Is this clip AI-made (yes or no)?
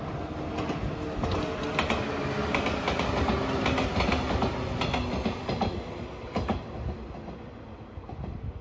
no